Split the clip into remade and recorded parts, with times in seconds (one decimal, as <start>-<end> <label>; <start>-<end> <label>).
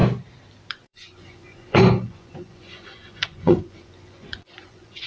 0.0-0.7 recorded; 0.7-5.1 remade